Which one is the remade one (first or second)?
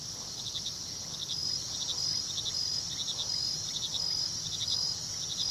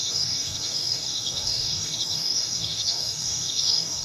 second